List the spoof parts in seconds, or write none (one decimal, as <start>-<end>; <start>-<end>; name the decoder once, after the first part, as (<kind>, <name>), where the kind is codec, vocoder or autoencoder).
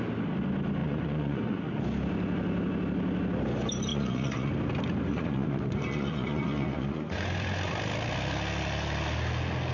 0.8-1.8 (vocoder, Vocos); 3.9-4.5; 5.1-7.7